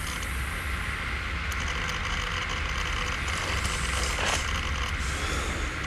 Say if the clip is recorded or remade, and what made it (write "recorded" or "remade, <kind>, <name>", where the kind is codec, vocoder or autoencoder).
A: recorded